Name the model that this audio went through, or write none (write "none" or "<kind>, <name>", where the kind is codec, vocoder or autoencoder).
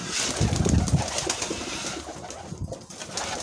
none